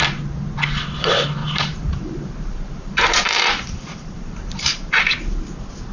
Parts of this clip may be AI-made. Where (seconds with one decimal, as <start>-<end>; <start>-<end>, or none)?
1.4-4.9